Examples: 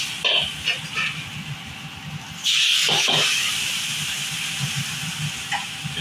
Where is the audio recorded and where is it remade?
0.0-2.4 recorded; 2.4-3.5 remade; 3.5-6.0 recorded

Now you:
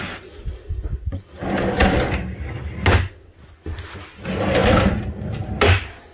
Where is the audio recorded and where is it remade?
0.0-6.1 recorded

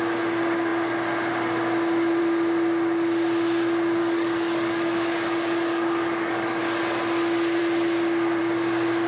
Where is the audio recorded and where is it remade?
0.0-4.0 recorded; 4.0-6.6 remade; 6.6-9.1 recorded

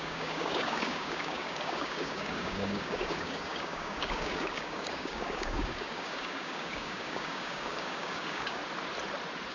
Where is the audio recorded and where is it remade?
0.0-8.6 remade; 8.6-9.5 recorded